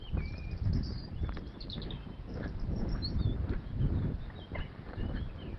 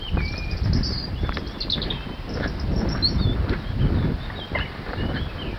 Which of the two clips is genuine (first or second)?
second